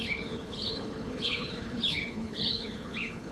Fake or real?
fake